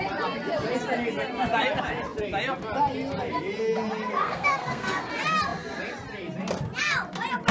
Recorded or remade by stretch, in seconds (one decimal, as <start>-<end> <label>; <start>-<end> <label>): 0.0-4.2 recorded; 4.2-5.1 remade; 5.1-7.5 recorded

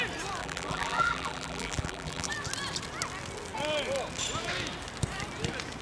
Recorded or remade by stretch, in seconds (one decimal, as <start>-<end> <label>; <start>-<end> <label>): 0.0-0.4 recorded; 0.4-2.3 remade; 2.3-5.8 recorded

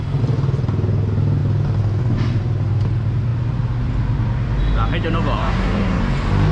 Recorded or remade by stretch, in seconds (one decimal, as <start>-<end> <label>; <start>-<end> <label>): 0.0-5.4 recorded; 5.4-6.0 remade; 6.0-6.5 recorded